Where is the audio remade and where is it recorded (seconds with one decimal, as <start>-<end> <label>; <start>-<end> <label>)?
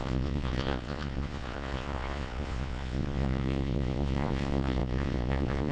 0.0-5.7 remade